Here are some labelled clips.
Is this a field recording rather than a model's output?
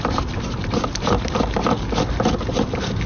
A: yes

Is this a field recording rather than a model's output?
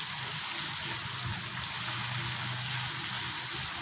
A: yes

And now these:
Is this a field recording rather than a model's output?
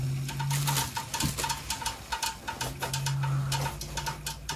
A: yes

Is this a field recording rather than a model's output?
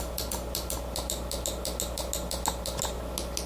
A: yes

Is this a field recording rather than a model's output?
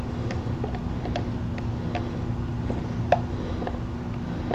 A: yes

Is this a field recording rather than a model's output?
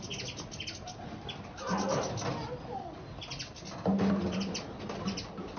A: yes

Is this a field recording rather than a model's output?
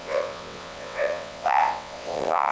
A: no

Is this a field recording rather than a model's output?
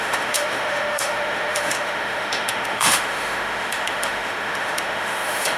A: no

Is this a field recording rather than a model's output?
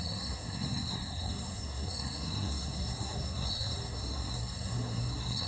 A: no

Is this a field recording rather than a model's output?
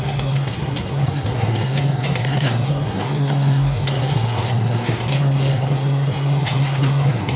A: no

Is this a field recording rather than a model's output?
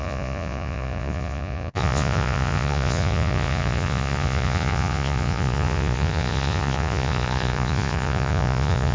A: no